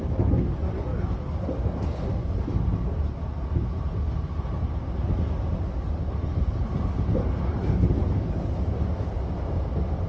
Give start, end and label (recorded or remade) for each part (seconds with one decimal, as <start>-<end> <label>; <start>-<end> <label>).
0.0-10.1 recorded